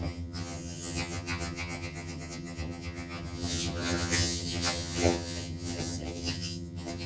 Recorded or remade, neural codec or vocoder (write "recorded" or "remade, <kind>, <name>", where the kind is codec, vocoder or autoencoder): remade, vocoder, HiFi-GAN